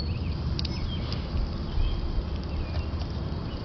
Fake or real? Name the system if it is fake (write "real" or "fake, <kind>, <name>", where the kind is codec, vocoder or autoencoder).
real